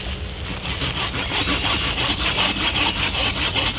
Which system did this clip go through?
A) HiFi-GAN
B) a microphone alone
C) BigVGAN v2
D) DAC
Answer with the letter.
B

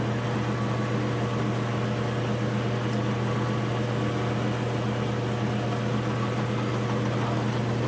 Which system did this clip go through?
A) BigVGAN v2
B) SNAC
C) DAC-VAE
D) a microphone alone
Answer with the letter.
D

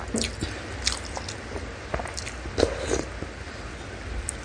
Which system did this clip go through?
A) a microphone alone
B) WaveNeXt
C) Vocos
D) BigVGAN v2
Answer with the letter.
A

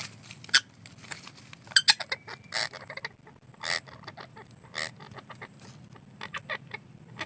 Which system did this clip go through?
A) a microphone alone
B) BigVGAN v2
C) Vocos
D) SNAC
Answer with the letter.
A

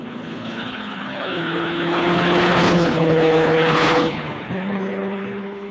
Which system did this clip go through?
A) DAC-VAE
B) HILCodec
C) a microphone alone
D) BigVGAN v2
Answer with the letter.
B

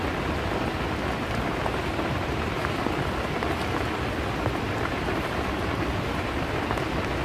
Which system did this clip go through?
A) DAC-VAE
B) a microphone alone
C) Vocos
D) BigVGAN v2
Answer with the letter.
B